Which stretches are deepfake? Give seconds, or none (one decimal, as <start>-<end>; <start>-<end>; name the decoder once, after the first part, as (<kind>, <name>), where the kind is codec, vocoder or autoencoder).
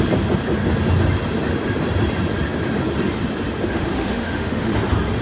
3.7-4.8 (autoencoder, DAC-VAE)